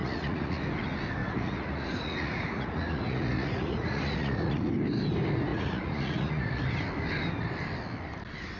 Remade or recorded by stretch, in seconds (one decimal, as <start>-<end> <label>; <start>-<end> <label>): 0.0-0.6 remade; 0.6-1.2 recorded; 1.2-4.7 remade; 4.7-5.5 recorded; 5.5-6.6 remade; 6.6-8.6 recorded